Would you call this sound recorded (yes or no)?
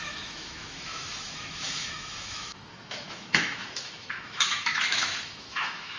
no